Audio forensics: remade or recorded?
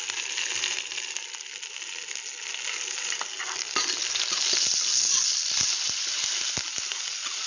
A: recorded